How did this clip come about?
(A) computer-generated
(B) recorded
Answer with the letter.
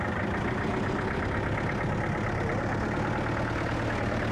B